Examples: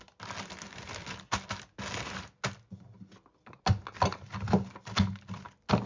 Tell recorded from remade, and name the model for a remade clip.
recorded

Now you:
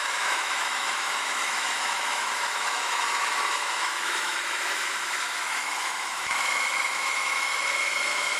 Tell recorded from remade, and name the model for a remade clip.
remade, autoencoder, DAC-VAE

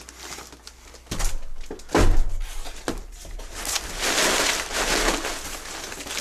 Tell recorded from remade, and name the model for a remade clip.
recorded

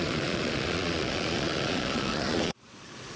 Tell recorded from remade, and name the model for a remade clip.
remade, vocoder, Vocos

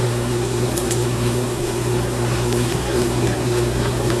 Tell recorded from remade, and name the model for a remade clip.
remade, codec, SNAC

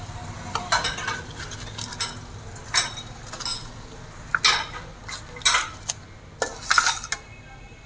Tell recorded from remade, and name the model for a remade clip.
recorded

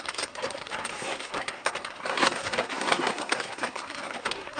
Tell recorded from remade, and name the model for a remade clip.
remade, codec, SNAC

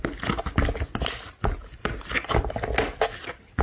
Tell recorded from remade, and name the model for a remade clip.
recorded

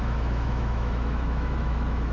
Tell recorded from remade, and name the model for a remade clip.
remade, autoencoder, DAC-VAE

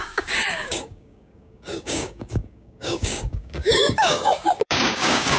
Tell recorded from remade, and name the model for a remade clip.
remade, codec, DAC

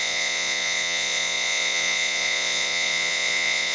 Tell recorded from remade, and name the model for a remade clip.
remade, vocoder, Vocos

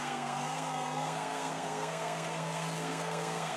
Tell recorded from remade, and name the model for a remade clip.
remade, codec, SNAC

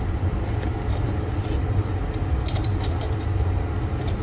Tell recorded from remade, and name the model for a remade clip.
recorded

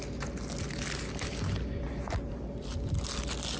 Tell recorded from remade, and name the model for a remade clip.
recorded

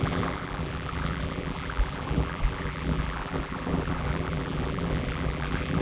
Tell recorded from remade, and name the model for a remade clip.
remade, vocoder, BigVGAN v2